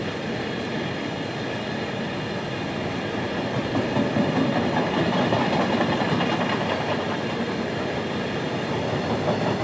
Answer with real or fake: real